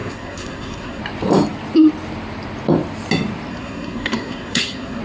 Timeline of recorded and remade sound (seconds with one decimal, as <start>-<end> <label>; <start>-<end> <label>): 0.0-1.0 remade; 1.0-3.5 recorded; 3.5-5.0 remade